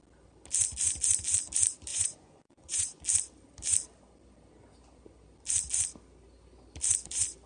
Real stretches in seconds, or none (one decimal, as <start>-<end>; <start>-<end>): 0.0-1.9; 3.0-7.5